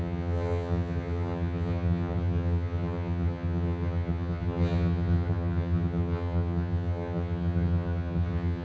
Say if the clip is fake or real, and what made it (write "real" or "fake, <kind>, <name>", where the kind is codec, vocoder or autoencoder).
fake, vocoder, HiFi-GAN